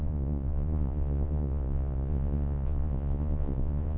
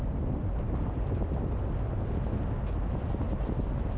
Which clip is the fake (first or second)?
first